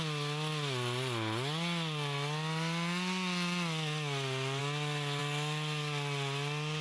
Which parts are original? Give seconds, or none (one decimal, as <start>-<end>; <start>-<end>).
0.0-6.8